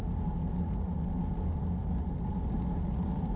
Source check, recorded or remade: recorded